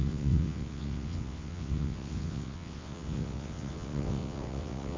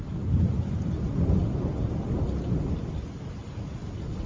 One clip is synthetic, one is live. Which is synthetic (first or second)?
first